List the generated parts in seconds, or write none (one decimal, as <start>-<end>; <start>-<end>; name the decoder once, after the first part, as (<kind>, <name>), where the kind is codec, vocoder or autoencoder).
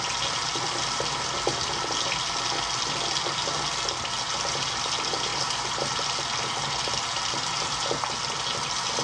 none